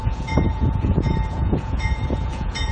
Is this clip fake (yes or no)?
yes